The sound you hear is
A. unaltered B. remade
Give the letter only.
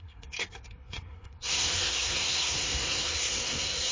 B